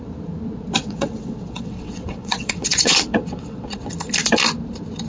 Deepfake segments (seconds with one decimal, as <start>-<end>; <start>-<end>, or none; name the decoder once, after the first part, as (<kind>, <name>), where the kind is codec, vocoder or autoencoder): 0.8-3.9 (vocoder, WaveNeXt)